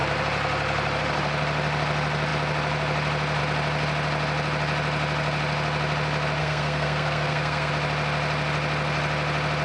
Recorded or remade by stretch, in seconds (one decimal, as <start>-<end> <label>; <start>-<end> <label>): 0.0-6.4 recorded; 6.4-7.7 remade; 7.7-9.6 recorded